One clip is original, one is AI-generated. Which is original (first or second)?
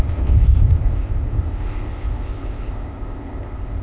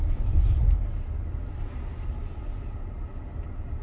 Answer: second